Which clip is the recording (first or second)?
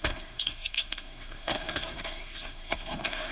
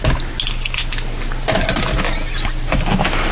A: second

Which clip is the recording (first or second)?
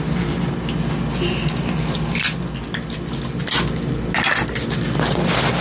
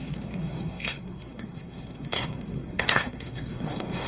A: first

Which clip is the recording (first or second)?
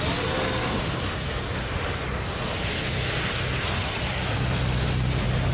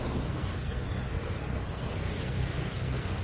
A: first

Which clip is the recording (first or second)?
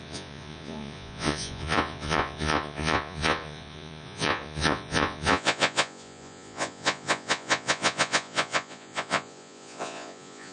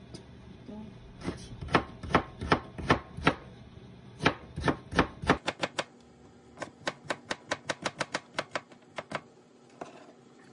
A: second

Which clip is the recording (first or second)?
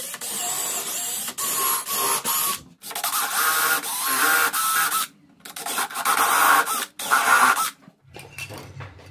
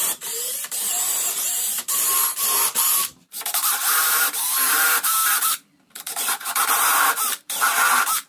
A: first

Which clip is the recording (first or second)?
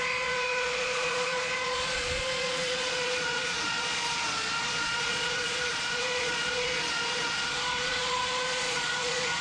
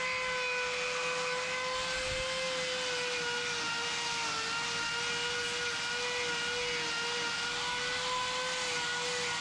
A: second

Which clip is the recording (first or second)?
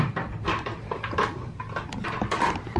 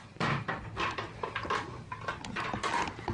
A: second